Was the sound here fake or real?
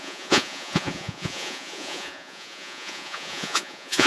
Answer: fake